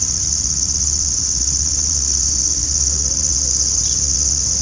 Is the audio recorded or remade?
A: remade